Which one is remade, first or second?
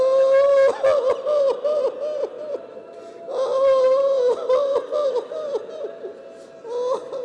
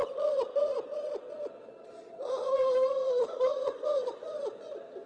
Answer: second